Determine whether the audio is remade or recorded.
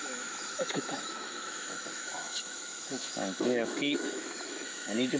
remade